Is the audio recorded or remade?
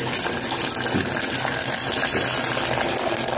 recorded